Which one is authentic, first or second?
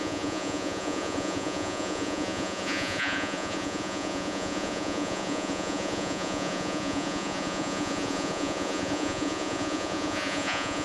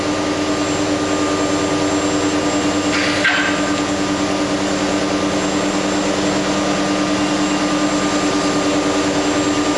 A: second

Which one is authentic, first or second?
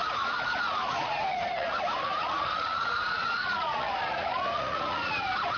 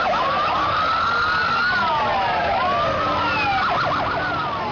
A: second